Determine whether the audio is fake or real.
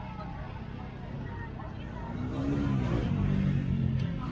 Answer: real